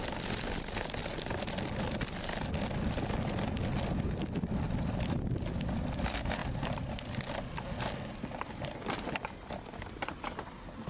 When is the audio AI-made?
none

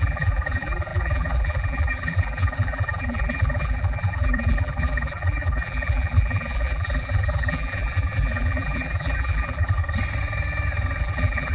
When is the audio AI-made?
0.0-9.8 (vocoder, BigVGAN v2); 11.0-11.5

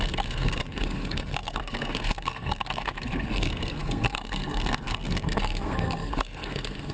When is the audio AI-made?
0.0-6.9 (codec, SNAC)

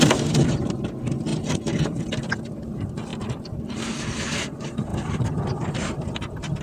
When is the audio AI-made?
1.3-2.0 (vocoder, BigVGAN v2); 4.9-6.6

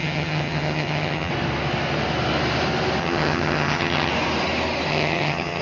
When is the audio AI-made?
0.0-1.3 (vocoder, HiFi-GAN); 3.0-4.1; 4.9-5.6